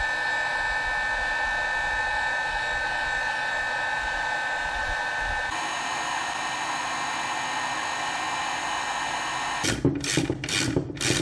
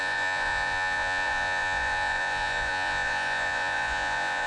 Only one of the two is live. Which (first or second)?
first